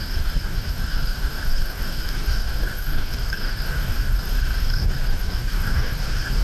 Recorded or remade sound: remade